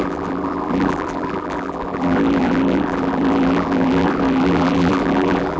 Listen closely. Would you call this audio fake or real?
fake